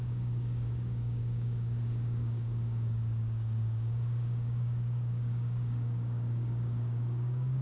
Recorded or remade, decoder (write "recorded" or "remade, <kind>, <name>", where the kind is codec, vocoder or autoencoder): remade, codec, DAC